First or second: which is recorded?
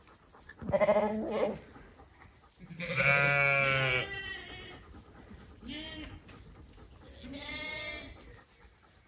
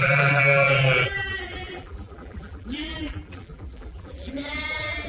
first